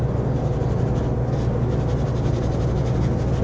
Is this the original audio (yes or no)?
yes